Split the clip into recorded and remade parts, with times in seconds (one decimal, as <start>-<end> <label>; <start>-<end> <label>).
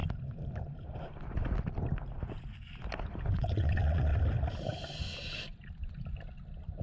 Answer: 0.0-3.3 recorded; 3.3-4.1 remade; 4.1-6.8 recorded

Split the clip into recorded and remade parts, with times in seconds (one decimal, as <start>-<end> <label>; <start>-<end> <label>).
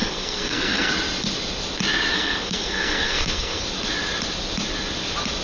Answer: 0.0-0.9 remade; 0.9-2.1 recorded; 2.1-3.6 remade; 3.6-5.4 recorded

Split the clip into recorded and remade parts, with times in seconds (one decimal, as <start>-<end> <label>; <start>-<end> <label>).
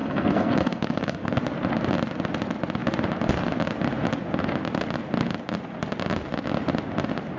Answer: 0.0-1.4 remade; 1.4-7.4 recorded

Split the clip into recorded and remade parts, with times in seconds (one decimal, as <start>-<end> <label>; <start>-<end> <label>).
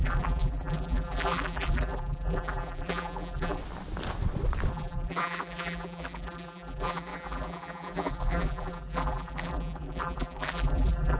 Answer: 0.0-3.6 remade; 3.6-4.7 recorded; 4.7-11.2 remade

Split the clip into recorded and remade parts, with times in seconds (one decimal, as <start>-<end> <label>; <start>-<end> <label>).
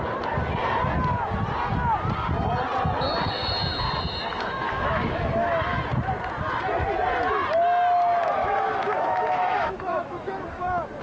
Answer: 0.0-4.3 recorded; 4.3-5.8 remade; 5.8-8.4 recorded; 8.4-11.0 remade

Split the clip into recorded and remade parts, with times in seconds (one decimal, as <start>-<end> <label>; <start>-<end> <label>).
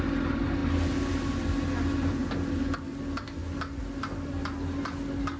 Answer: 0.0-5.4 recorded